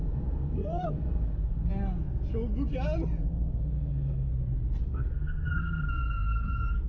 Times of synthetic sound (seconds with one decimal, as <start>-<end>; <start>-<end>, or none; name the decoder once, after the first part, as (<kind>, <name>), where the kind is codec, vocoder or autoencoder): 0.0-1.7 (codec, SNAC); 3.3-4.3; 4.8-6.9